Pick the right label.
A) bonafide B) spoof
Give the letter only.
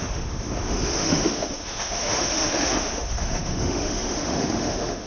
B